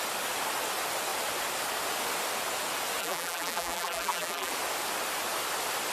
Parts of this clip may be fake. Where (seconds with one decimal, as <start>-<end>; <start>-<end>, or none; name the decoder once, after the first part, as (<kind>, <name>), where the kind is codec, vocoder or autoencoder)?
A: 3.0-4.5 (vocoder, BigVGAN v2)